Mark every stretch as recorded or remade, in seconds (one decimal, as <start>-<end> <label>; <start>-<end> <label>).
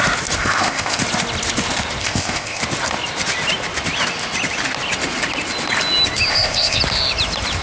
0.0-0.4 recorded; 0.4-1.0 remade; 1.0-2.0 recorded; 2.0-2.6 remade; 2.6-6.3 recorded; 6.3-6.8 remade; 6.8-7.6 recorded